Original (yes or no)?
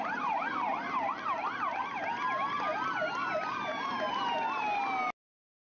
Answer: yes